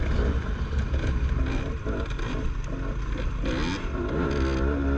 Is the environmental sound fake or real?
real